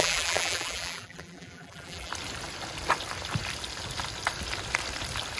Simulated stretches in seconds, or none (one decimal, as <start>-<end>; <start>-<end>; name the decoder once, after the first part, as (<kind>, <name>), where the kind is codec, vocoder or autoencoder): 0.0-2.1 (vocoder, BigVGAN v2)